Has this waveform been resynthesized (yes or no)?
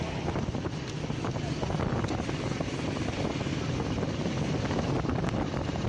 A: no